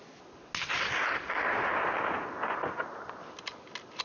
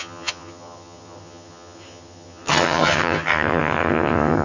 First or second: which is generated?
second